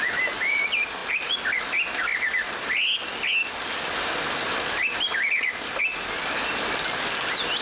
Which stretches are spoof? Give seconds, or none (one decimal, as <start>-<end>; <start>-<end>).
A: none